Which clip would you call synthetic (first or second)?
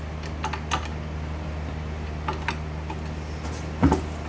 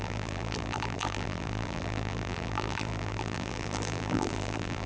second